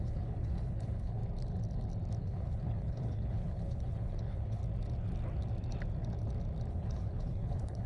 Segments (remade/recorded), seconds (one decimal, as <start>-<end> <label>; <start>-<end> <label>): 0.0-1.2 remade; 1.2-2.2 recorded; 2.2-4.6 remade; 4.6-6.7 recorded; 6.7-7.9 remade